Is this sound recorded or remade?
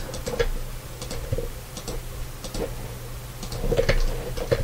recorded